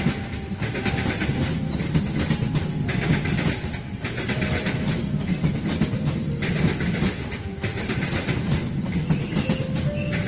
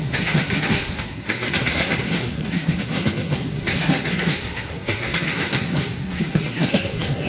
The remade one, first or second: second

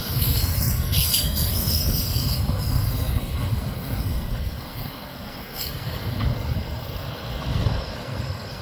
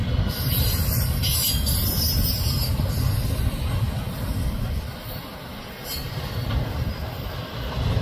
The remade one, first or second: first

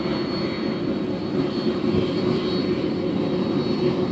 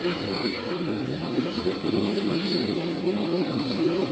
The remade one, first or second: second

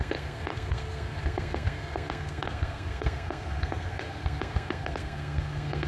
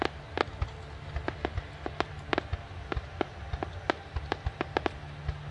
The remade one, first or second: first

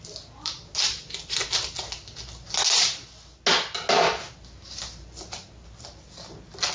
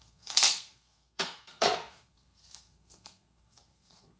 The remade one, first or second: second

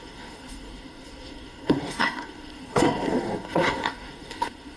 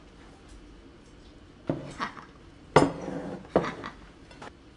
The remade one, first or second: first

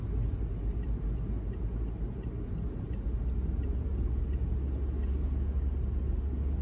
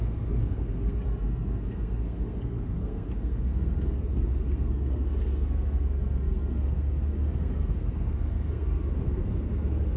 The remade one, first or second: second